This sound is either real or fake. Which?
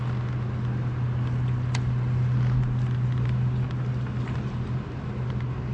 real